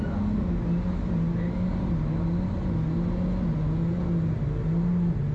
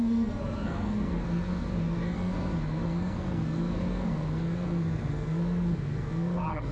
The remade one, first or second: second